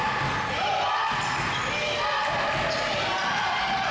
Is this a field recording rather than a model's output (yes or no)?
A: yes